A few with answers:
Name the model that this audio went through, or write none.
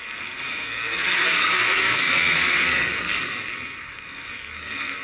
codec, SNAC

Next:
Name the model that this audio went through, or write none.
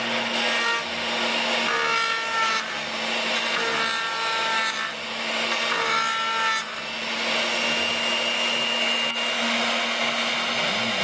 none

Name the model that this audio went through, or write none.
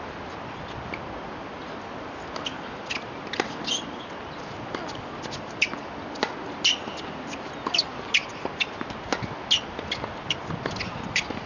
none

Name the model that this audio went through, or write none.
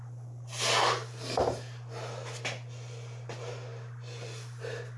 none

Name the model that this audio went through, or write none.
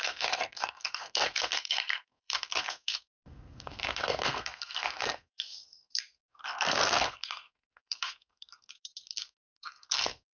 codec, SNAC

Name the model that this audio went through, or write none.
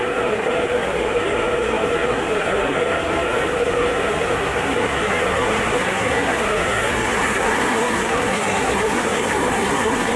codec, SNAC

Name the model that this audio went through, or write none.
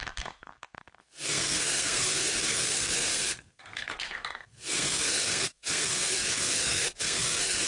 codec, SNAC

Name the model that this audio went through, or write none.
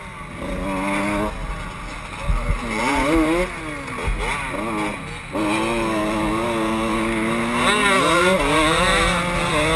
none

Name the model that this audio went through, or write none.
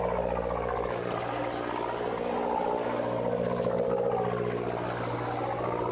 none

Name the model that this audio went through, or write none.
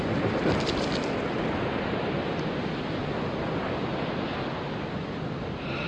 none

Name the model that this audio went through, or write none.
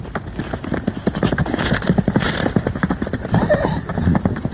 none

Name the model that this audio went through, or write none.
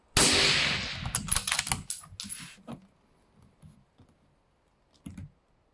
none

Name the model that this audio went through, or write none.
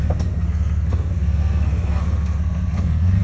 codec, SNAC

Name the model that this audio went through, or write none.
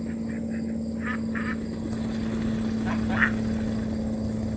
none